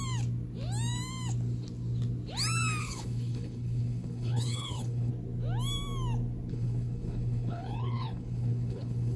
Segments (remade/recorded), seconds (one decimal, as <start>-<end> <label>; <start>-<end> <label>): 0.0-2.8 recorded; 2.8-5.1 remade; 5.1-6.5 recorded; 6.5-9.2 remade